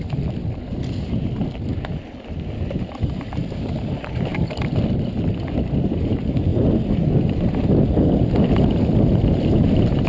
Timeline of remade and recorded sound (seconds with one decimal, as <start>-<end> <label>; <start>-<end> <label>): 0.0-10.1 recorded